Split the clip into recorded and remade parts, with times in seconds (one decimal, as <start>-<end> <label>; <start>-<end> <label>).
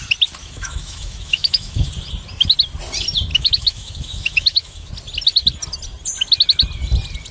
0.0-0.4 recorded; 0.4-1.9 remade; 1.9-3.3 recorded; 3.3-4.9 remade; 4.9-7.3 recorded